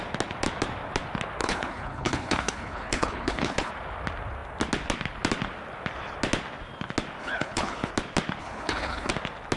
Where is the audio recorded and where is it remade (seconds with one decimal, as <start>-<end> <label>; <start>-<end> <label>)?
0.0-1.4 recorded; 1.4-3.7 remade; 3.7-7.2 recorded; 7.2-7.9 remade; 7.9-8.4 recorded; 8.4-9.1 remade; 9.1-9.6 recorded